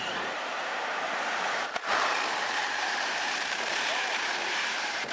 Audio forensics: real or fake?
fake